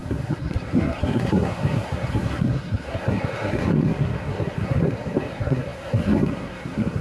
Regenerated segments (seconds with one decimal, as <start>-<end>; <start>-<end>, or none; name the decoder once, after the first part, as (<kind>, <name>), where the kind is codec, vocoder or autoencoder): 0.0-7.0 (codec, SNAC)